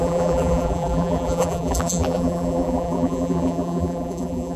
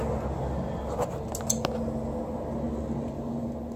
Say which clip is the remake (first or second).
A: first